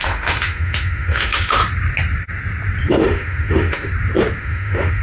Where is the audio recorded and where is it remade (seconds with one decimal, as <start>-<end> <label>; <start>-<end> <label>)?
0.0-1.6 remade; 1.6-2.9 recorded; 2.9-3.9 remade; 3.9-4.4 recorded; 4.4-5.0 remade